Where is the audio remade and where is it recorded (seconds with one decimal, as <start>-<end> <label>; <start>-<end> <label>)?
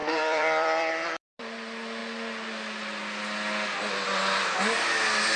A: 0.0-2.0 remade; 2.0-5.4 recorded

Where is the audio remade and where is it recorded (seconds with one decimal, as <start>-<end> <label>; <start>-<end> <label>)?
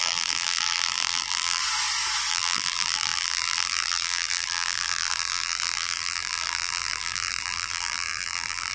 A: 0.0-1.6 remade; 1.6-2.3 recorded; 2.3-8.7 remade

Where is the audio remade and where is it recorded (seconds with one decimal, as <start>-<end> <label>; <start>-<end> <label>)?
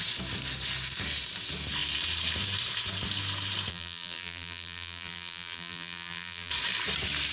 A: 0.0-3.7 recorded; 3.7-6.5 remade; 6.5-7.3 recorded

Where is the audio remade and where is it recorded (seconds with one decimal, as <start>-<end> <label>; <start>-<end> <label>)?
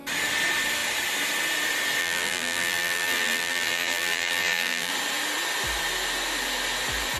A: 0.0-2.0 recorded; 2.0-4.9 remade; 4.9-7.2 recorded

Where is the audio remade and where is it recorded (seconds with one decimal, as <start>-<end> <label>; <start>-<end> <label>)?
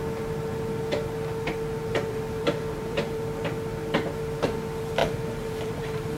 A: 0.0-1.9 recorded; 1.9-3.2 remade; 3.2-5.0 recorded; 5.0-6.2 remade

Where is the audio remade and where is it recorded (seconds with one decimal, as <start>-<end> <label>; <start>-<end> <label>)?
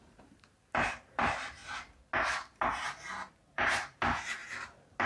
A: 0.0-1.6 remade; 1.6-3.3 recorded; 3.3-4.4 remade; 4.4-5.1 recorded